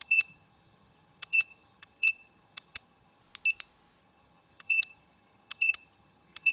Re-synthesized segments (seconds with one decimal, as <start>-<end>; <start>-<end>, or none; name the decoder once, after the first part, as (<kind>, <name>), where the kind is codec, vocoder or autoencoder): 0.0-3.2 (vocoder, HiFi-GAN); 4.0-6.5